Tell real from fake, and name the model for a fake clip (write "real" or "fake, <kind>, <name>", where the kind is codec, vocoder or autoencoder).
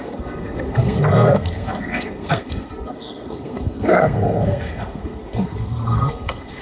fake, codec, SNAC